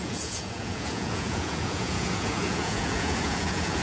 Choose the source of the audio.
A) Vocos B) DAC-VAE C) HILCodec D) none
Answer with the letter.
A